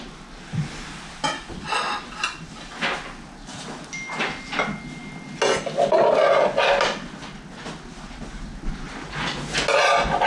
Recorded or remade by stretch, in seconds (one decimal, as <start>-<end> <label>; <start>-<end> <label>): 0.0-10.3 recorded